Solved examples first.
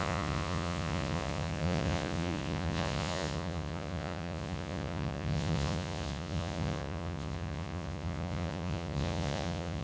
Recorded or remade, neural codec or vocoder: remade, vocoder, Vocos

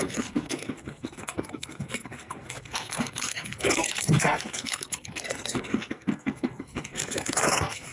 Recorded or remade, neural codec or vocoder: remade, codec, SNAC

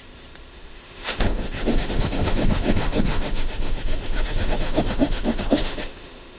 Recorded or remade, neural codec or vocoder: remade, autoencoder, DAC-VAE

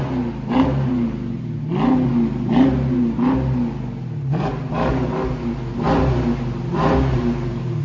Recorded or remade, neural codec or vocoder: recorded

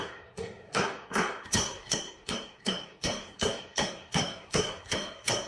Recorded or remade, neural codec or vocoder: remade, codec, SNAC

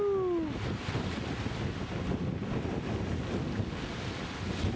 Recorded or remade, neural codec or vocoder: recorded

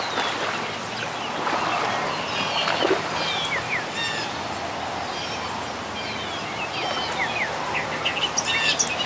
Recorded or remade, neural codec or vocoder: recorded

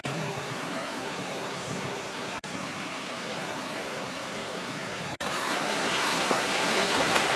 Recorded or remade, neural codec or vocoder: remade, codec, SNAC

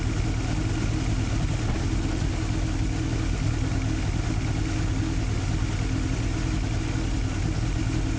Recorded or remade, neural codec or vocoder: recorded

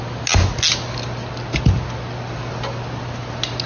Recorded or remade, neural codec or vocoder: recorded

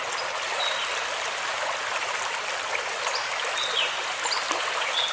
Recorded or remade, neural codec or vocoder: recorded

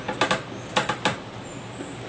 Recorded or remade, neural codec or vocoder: recorded